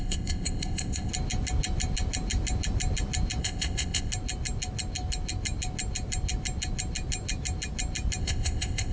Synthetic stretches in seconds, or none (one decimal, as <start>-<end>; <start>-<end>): 0.0-1.1; 3.4-4.1; 8.2-8.9

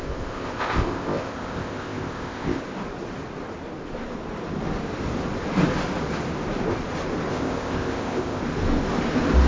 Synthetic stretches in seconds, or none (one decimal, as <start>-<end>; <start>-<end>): 0.0-2.6; 7.3-8.4